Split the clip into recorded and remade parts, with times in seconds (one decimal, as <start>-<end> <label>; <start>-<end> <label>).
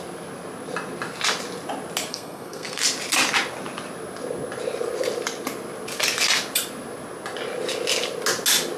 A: 0.0-2.1 recorded; 2.1-2.8 remade; 2.8-8.8 recorded